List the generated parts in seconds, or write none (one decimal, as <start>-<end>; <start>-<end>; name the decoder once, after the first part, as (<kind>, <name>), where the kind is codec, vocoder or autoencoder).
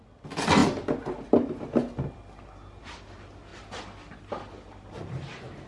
none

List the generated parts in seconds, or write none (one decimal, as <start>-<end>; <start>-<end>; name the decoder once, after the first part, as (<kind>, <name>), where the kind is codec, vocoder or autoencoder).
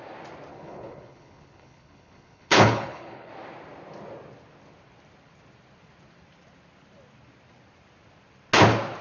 0.5-3.3 (codec, HILCodec)